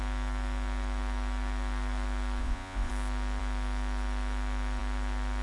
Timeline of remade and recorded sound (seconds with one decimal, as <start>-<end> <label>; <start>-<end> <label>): 0.0-2.4 recorded; 2.4-2.9 remade; 2.9-5.4 recorded